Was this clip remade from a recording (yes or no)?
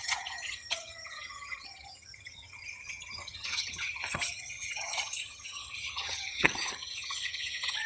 yes